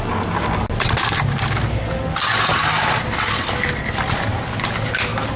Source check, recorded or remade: recorded